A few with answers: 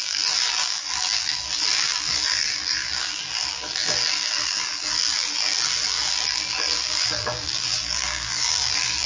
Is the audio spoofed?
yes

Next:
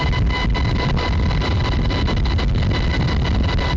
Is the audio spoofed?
no